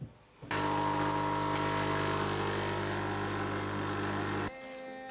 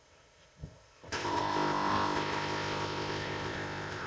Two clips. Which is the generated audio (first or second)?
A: second